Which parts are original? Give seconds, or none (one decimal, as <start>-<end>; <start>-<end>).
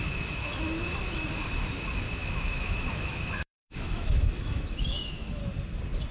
5.4-6.1